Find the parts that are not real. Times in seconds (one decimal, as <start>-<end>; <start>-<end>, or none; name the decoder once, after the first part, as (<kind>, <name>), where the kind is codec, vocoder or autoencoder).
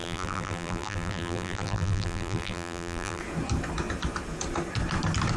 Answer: 0.0-3.2 (vocoder, BigVGAN v2)